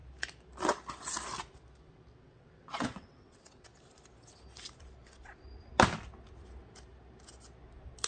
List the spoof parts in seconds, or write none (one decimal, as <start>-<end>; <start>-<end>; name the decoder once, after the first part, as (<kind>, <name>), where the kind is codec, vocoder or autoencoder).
2.2-3.7 (vocoder, WaveNeXt)